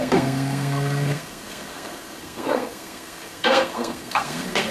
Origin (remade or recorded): remade